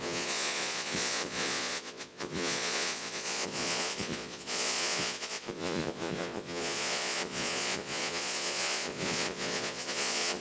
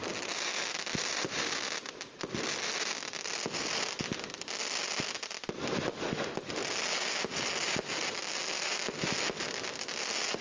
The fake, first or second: first